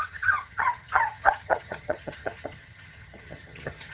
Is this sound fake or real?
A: fake